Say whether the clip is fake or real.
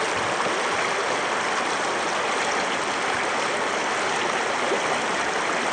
real